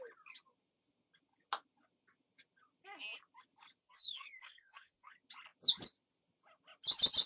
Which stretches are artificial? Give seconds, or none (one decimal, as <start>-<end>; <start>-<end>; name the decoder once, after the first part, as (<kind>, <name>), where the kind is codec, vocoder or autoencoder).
3.8-5.1 (codec, SNAC)